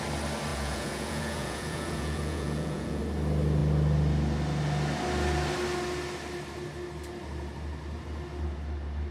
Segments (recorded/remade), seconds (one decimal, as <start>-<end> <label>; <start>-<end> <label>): 0.0-0.5 recorded; 0.5-3.0 remade; 3.0-9.1 recorded